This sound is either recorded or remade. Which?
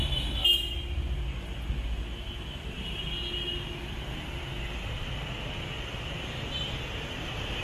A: recorded